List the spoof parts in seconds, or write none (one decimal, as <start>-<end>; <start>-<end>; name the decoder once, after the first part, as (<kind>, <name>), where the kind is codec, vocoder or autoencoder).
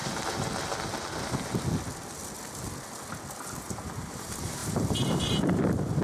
3.6-6.0 (vocoder, BigVGAN v2)